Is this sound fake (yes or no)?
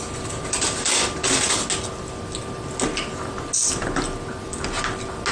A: no